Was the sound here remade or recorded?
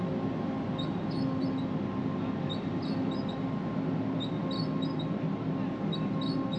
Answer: recorded